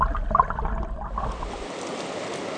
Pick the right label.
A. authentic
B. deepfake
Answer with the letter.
A